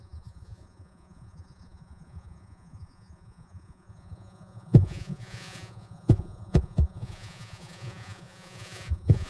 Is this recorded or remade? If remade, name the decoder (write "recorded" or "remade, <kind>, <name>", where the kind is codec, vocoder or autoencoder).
remade, vocoder, Vocos